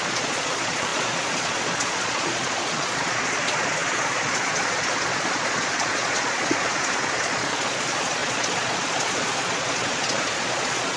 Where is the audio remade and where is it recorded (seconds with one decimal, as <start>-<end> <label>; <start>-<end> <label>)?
0.0-11.0 remade